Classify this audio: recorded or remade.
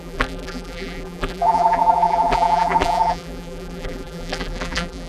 remade